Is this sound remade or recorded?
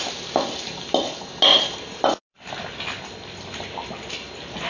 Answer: recorded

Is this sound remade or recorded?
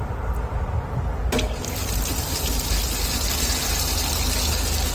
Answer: recorded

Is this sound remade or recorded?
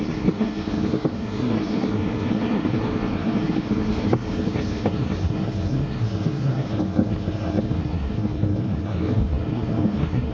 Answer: remade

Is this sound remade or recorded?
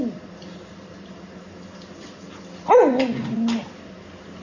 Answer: recorded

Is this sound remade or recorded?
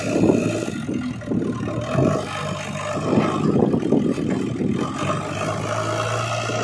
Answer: recorded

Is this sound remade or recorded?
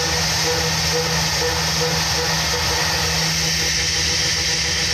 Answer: recorded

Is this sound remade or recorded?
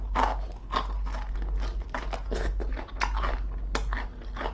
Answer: recorded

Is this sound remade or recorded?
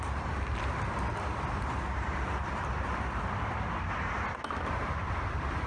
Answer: recorded